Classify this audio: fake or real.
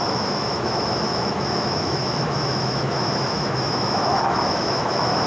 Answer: fake